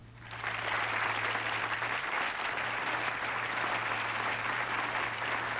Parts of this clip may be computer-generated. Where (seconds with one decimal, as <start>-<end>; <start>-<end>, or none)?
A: none